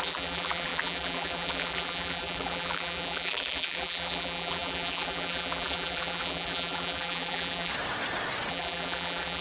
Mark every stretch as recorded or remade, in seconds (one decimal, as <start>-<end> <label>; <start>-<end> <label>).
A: 0.0-7.7 remade; 7.7-8.5 recorded; 8.5-9.4 remade